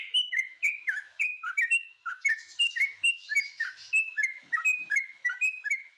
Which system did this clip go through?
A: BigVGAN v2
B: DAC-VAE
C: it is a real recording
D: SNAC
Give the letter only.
B